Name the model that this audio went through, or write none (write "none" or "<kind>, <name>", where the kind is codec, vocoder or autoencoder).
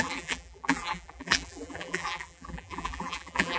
vocoder, BigVGAN v2